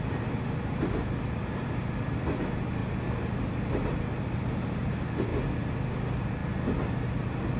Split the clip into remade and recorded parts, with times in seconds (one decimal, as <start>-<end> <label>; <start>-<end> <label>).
0.0-7.6 recorded